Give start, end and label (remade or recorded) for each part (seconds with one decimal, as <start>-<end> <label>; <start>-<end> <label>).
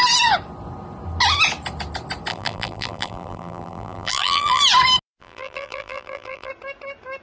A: 0.0-2.3 recorded; 2.3-4.6 remade; 4.6-5.2 recorded; 5.2-6.5 remade; 6.5-7.2 recorded